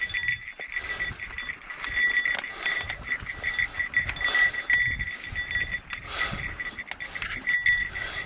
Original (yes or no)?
yes